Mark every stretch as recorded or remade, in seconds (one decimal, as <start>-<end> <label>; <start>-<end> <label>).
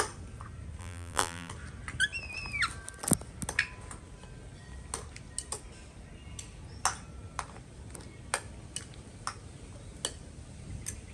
0.0-0.8 recorded; 0.8-1.5 remade; 1.5-11.1 recorded